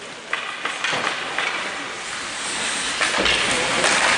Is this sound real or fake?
real